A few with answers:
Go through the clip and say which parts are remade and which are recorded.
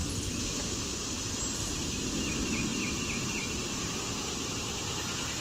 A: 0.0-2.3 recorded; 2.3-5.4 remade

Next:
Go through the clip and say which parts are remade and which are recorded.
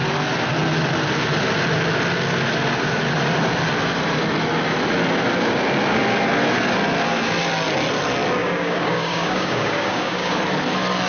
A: 0.0-8.4 recorded; 8.4-10.4 remade; 10.4-11.1 recorded